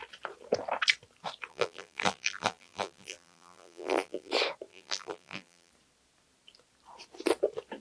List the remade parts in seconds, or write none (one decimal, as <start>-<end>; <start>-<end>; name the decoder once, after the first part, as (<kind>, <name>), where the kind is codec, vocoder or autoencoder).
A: 1.5-4.3 (vocoder, BigVGAN v2); 4.7-5.7

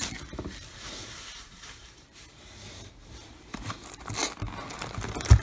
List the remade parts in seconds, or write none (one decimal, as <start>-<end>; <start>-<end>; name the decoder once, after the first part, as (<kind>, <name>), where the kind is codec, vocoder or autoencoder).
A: 1.0-4.1 (vocoder, BigVGAN v2)

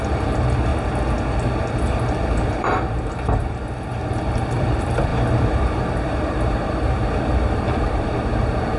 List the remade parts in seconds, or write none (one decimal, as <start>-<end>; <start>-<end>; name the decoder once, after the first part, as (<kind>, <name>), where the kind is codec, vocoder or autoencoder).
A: 0.0-0.7 (vocoder, BigVGAN v2); 1.7-8.8

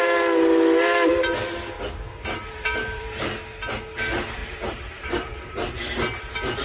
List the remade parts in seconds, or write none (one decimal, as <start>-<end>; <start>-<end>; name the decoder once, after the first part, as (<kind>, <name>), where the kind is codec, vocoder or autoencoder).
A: 2.1-3.2 (vocoder, BigVGAN v2); 4.4-5.8